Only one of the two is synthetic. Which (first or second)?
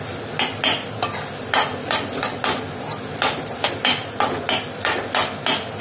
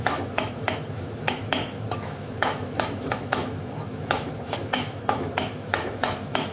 second